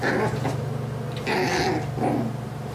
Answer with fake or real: real